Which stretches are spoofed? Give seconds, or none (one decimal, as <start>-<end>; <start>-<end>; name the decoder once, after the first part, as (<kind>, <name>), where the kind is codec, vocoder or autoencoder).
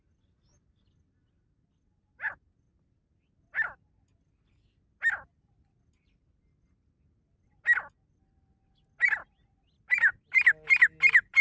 none